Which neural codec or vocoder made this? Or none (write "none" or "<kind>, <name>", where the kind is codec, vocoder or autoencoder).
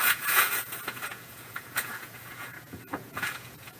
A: vocoder, Vocos